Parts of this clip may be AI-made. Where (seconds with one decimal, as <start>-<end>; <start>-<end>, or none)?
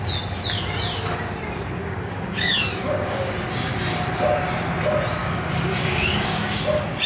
1.8-3.3; 5.2-6.6